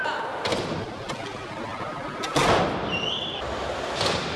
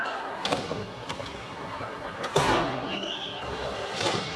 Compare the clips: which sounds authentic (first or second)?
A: first